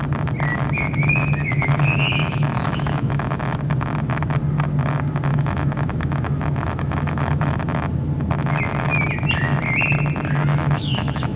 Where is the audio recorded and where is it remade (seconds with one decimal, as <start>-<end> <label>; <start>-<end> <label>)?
0.0-0.5 recorded; 0.5-3.4 remade; 3.4-5.3 recorded; 5.3-7.6 remade; 7.6-10.5 recorded; 10.5-11.4 remade